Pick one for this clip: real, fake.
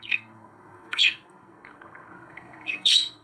fake